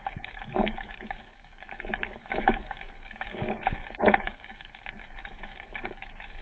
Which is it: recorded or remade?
remade